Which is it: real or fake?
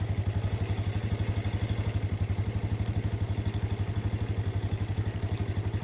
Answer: real